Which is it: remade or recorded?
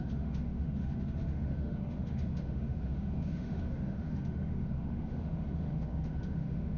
remade